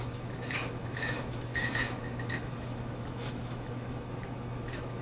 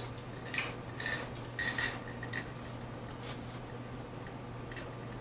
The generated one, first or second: first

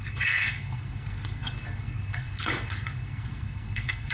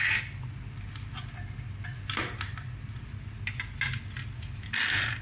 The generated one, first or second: first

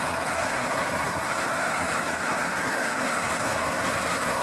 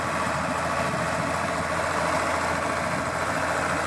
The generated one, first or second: first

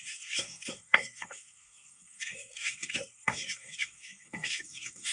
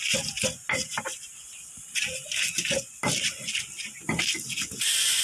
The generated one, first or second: first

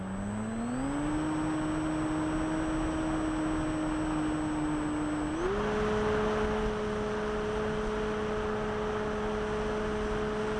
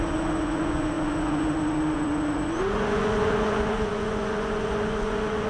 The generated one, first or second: second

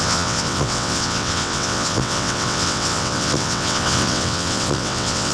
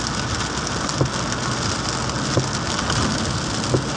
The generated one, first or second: first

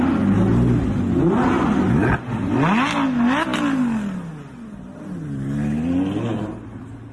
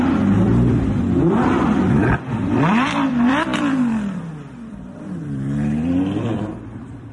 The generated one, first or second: second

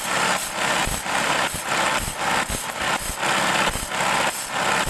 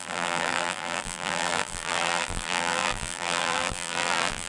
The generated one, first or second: second